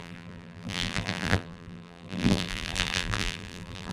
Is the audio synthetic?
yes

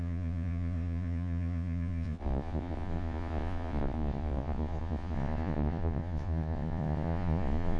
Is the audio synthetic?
yes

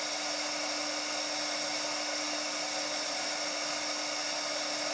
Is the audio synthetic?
no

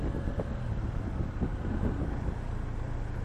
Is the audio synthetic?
no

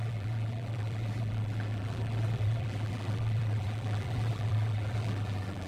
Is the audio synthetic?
yes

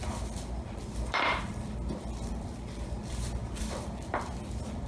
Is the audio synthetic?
yes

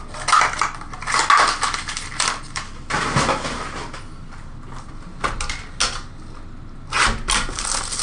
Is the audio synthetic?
no